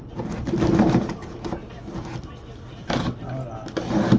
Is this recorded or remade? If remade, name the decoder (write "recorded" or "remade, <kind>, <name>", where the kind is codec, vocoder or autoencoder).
recorded